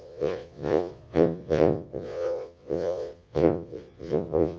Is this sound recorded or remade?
remade